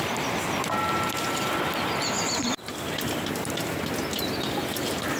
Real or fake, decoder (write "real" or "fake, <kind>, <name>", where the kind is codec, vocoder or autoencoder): real